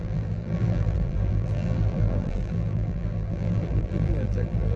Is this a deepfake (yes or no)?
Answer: yes